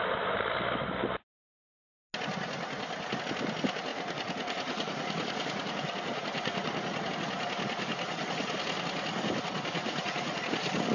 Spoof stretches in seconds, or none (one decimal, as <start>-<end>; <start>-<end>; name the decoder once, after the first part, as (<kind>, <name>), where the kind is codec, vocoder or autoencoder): 3.9-7.1 (vocoder, Vocos); 9.8-10.4